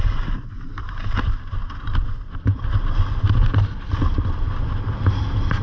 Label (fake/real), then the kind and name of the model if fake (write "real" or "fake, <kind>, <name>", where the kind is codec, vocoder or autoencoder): real